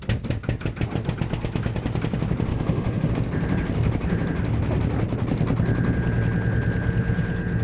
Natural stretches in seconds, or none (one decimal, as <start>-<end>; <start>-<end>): 0.0-2.5; 3.1-7.6